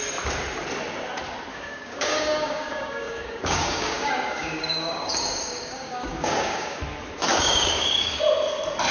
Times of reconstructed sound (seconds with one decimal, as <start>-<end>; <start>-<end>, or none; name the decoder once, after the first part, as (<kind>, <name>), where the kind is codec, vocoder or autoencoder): 1.5-6.8 (codec, DAC); 7.3-8.2